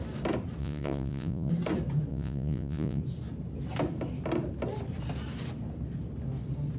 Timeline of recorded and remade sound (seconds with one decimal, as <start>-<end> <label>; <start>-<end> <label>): 0.0-0.6 recorded; 0.6-1.5 remade; 1.5-2.1 recorded; 2.1-3.0 remade; 3.0-6.8 recorded